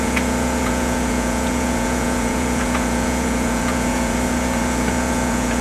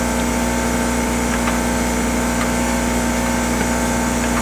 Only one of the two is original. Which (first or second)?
second